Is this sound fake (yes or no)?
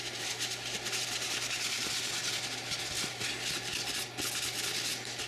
no